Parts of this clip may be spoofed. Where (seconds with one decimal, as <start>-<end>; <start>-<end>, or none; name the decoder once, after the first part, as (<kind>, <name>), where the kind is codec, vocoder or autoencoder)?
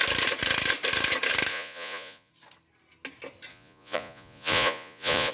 1.5-2.3 (vocoder, Vocos); 3.5-5.3